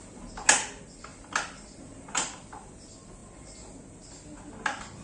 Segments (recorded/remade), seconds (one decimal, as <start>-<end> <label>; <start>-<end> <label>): 0.0-5.0 recorded